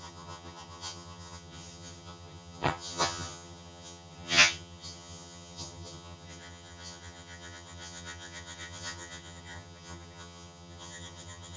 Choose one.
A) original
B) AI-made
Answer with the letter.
B